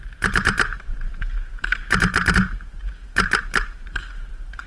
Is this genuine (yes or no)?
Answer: no